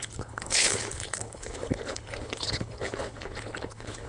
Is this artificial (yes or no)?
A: yes